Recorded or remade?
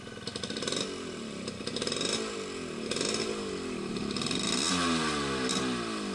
recorded